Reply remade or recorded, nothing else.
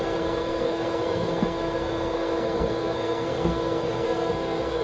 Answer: remade